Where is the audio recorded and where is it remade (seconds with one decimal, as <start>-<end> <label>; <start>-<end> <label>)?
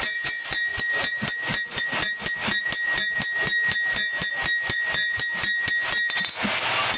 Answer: 0.0-7.0 recorded